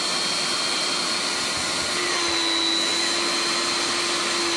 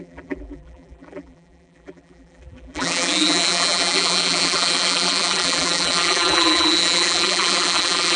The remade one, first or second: second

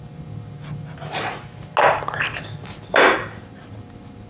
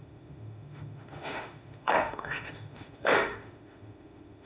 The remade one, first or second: second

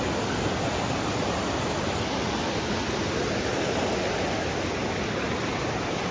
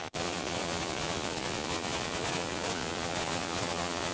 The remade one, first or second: second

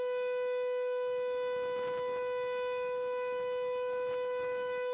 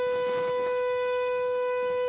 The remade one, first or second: second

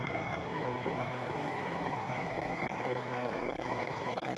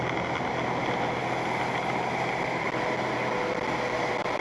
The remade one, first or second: first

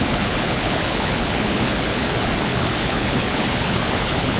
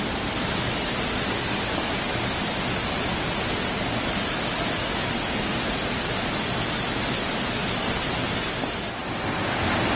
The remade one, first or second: first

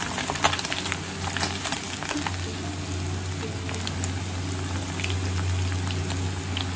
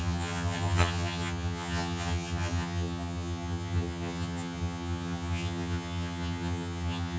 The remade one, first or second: second